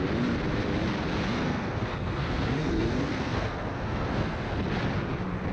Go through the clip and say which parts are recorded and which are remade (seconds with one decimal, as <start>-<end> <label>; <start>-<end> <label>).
0.0-1.3 recorded; 1.3-4.6 remade; 4.6-5.5 recorded